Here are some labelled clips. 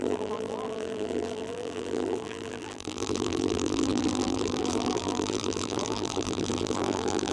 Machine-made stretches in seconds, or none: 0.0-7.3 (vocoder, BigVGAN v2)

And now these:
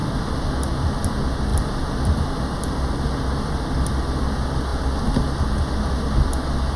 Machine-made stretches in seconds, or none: 0.0-0.5 (vocoder, BigVGAN v2); 1.5-4.2